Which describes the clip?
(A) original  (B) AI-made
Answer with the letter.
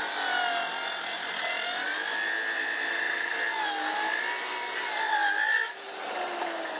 A